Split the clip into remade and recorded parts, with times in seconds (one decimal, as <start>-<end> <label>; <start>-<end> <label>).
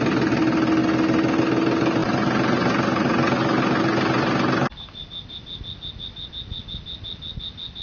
0.0-7.8 recorded